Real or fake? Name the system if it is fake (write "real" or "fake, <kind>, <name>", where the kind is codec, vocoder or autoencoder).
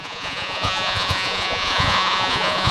fake, vocoder, Vocos